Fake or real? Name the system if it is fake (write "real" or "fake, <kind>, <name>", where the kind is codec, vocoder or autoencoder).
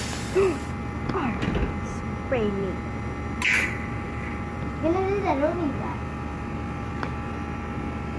real